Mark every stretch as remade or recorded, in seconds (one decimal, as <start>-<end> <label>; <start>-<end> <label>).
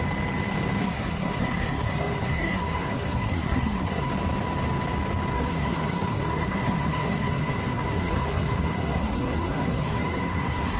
0.0-0.8 recorded; 0.8-4.1 remade; 4.1-5.3 recorded; 5.3-10.8 remade